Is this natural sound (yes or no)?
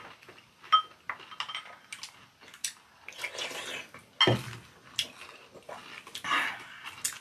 yes